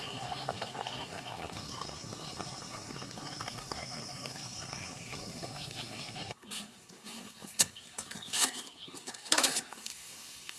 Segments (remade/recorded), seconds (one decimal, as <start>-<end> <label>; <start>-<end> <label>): 0.0-10.6 remade